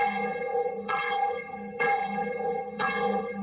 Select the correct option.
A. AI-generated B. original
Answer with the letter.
A